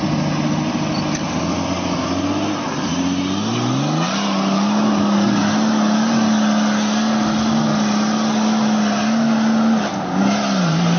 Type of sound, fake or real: real